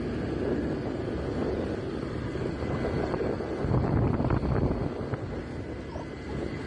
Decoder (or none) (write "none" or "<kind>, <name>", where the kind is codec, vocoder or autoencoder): none